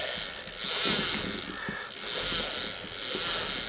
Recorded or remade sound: recorded